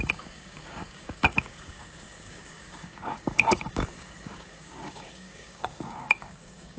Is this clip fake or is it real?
fake